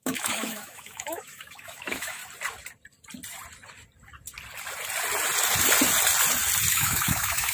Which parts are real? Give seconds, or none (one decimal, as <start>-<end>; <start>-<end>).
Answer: 2.2-6.7

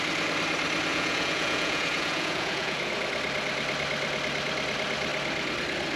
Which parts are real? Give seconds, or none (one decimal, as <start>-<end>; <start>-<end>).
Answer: 0.0-0.9; 2.9-6.0

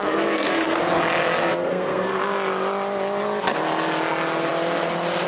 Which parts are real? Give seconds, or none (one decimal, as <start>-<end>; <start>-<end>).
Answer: 0.8-1.4; 2.2-5.3